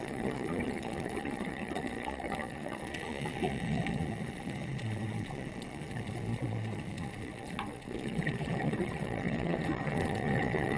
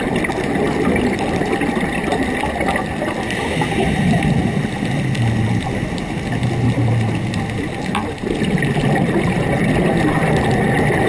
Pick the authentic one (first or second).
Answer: second